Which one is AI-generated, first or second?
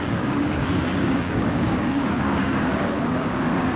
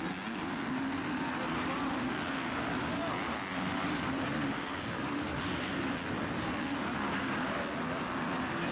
first